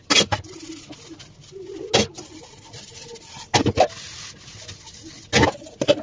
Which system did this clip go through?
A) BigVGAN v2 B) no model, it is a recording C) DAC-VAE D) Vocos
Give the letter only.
B